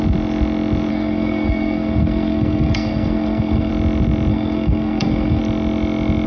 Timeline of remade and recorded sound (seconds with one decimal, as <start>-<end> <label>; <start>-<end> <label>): 0.0-0.9 recorded; 0.9-3.7 remade; 3.7-4.3 recorded; 4.3-5.4 remade; 5.4-6.3 recorded